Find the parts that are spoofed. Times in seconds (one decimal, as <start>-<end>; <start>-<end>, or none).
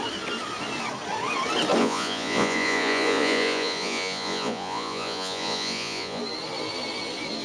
1.8-6.2